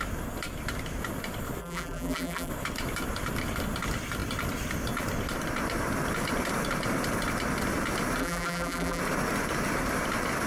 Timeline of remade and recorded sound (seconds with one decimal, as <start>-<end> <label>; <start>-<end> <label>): 0.0-1.6 recorded; 1.6-2.5 remade; 2.5-8.2 recorded; 8.2-9.0 remade; 9.0-10.5 recorded